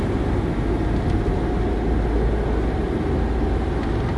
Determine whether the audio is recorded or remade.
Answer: recorded